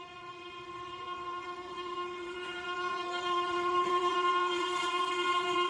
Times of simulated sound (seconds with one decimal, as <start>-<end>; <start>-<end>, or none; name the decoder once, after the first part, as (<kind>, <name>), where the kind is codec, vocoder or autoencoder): 0.0-5.7 (vocoder, Vocos)